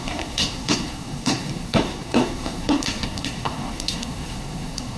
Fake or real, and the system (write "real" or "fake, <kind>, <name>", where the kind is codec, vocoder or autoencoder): fake, codec, SNAC